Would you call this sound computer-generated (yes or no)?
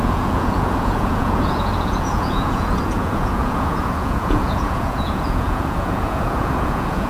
yes